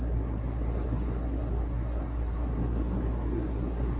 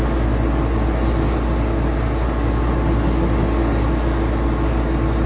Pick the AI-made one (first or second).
first